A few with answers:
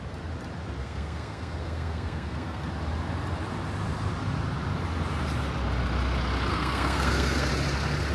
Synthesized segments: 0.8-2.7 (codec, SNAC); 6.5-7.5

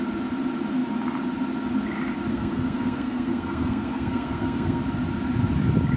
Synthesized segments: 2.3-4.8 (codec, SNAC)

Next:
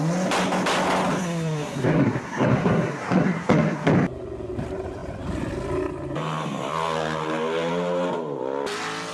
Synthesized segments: 1.2-3.9 (codec, SNAC)

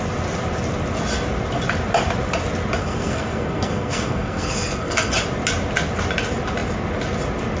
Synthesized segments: 2.8-5.1 (codec, SNAC)